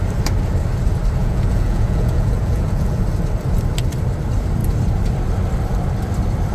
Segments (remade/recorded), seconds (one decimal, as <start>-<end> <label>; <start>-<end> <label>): 0.0-1.2 recorded; 1.2-3.0 remade; 3.0-6.5 recorded